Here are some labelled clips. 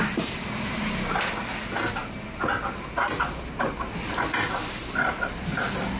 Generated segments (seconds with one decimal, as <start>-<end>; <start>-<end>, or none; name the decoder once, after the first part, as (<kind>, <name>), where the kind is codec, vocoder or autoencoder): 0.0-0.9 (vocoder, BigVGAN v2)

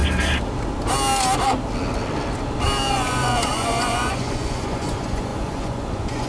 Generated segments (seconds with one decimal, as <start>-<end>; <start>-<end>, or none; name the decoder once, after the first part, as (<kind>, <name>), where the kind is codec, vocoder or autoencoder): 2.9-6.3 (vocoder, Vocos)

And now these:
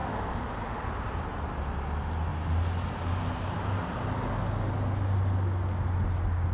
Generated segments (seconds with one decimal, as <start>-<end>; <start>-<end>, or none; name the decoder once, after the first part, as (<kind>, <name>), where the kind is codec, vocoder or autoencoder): none